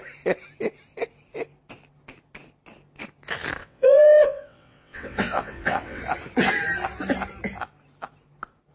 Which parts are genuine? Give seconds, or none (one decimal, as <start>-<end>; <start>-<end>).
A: 0.0-3.6; 6.0-8.7